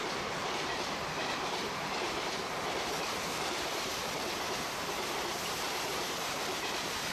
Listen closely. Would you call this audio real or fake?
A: fake